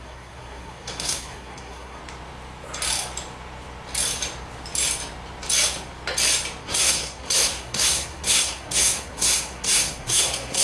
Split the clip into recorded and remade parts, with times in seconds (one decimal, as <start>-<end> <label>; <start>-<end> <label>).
0.0-2.0 remade; 2.0-6.6 recorded; 6.6-10.6 remade